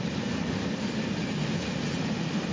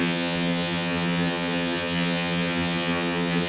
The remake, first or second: second